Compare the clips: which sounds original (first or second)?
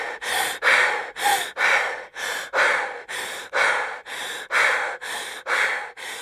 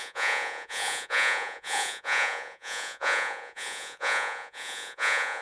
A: first